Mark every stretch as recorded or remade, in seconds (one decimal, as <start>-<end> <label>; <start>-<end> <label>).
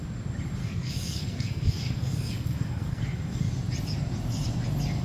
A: 0.0-0.6 recorded; 0.6-3.5 remade; 3.5-5.0 recorded